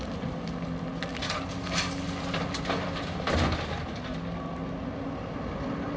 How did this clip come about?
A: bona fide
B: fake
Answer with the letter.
A